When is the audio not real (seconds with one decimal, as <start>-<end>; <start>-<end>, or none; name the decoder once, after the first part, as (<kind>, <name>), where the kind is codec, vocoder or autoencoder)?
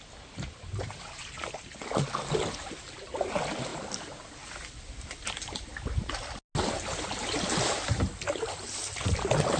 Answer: 3.7-4.5 (vocoder, BigVGAN v2)